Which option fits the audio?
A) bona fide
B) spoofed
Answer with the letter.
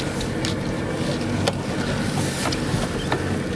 A